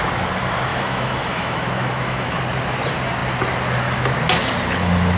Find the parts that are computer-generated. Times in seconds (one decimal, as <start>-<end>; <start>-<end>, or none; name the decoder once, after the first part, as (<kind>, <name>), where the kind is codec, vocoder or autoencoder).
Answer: 0.7-2.4 (autoencoder, DAC-VAE)

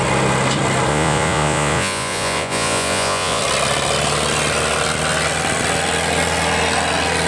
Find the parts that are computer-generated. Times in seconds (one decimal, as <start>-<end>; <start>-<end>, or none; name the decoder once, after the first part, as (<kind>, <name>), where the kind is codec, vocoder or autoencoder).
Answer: 0.9-3.4 (vocoder, Vocos)

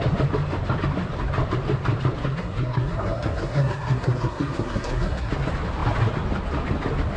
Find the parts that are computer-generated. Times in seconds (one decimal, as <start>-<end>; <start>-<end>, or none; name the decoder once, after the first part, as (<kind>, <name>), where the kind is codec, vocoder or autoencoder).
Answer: 2.2-5.3 (codec, SNAC)

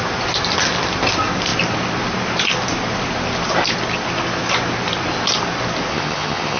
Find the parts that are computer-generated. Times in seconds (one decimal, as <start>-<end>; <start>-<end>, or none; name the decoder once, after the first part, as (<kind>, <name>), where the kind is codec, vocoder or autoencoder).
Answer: 5.9-6.6 (vocoder, HiFi-GAN)

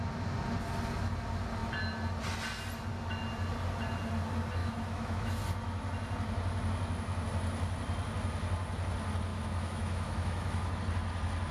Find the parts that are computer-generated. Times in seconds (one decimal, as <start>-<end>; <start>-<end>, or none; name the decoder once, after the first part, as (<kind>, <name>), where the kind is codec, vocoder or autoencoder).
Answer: 4.6-5.3 (autoencoder, DAC-VAE); 9.3-10.8